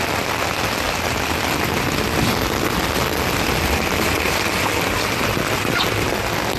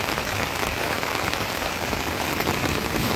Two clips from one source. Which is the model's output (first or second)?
second